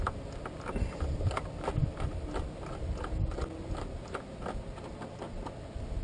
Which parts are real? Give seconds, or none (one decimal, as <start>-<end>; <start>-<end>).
0.0-6.0